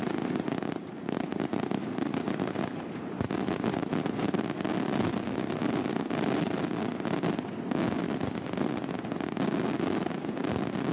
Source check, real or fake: real